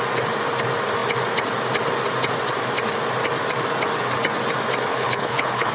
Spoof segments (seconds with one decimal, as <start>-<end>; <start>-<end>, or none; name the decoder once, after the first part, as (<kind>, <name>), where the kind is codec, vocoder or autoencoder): 4.9-5.7 (codec, HILCodec)

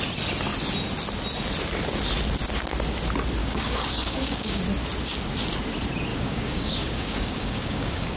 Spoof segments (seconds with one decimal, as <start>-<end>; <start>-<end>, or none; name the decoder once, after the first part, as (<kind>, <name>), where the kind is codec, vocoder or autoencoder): 3.4-4.6 (codec, DAC); 6.1-8.2

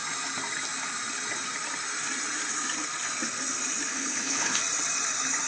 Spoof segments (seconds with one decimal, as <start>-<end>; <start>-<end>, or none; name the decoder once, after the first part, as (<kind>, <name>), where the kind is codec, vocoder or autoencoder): 3.9-4.6 (codec, HILCodec)

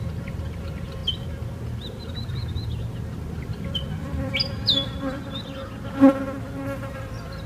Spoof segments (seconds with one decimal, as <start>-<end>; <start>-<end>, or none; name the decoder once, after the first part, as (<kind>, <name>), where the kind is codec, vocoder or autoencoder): 0.0-1.0 (vocoder, BigVGAN v2); 2.0-2.6; 3.4-5.2; 6.9-7.5

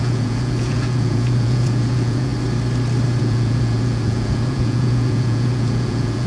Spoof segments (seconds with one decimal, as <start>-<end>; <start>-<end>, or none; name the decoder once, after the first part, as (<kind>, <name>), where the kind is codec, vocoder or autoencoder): 0.0-2.3 (vocoder, Vocos); 3.2-6.3